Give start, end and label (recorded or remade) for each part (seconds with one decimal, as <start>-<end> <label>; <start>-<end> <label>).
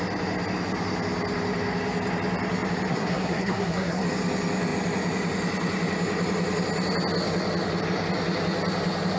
0.0-2.9 recorded; 2.9-4.0 remade; 4.0-9.2 recorded